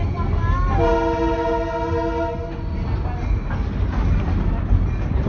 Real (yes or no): yes